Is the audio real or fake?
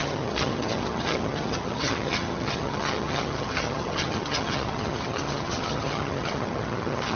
fake